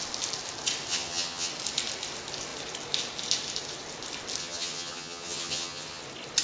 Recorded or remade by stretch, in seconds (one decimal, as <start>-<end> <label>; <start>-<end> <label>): 0.0-0.9 recorded; 0.9-1.5 remade; 1.5-4.4 recorded; 4.4-6.0 remade; 6.0-6.4 recorded